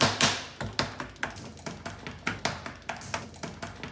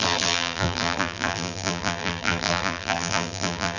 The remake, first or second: second